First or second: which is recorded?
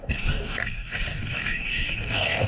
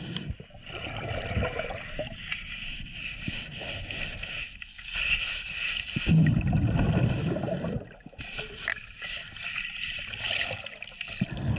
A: second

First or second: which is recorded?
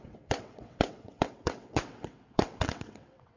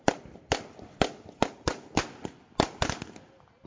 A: second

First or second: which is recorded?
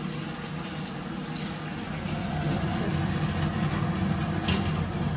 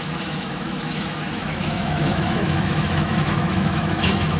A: first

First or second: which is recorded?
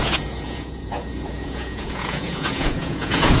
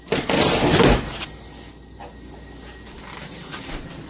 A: second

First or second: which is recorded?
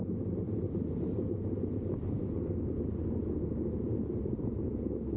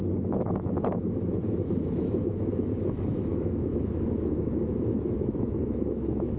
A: first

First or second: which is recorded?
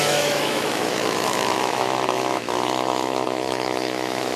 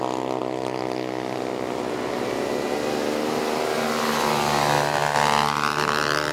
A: second